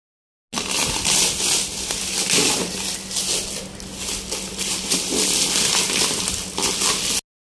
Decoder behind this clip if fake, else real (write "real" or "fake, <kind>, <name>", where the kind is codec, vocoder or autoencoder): real